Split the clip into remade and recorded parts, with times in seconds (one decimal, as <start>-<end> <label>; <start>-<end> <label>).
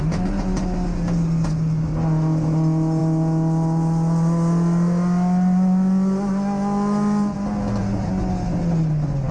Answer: 0.0-9.3 recorded